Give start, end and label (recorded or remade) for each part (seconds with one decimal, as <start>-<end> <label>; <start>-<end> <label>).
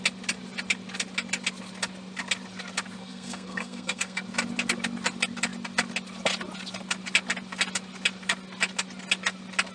0.0-3.0 recorded; 3.0-4.2 remade; 4.2-9.7 recorded